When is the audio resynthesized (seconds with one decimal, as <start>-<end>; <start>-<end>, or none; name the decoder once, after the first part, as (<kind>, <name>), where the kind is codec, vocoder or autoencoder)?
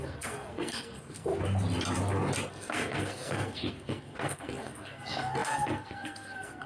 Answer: 0.0-1.3 (codec, SNAC); 2.5-6.7